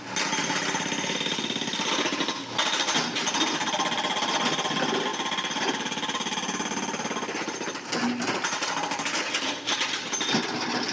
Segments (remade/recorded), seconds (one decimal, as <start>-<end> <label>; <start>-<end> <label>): 0.0-10.9 recorded

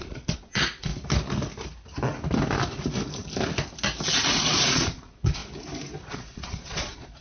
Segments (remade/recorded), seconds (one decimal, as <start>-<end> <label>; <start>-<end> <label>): 0.0-0.9 remade; 0.9-4.3 recorded; 4.3-5.4 remade; 5.4-6.0 recorded; 6.0-7.2 remade